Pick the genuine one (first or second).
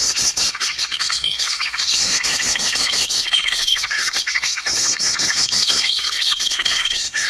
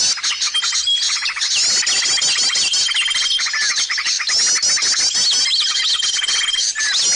second